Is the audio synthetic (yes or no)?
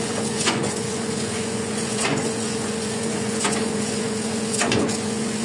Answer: yes